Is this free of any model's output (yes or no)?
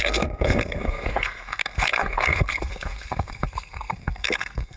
no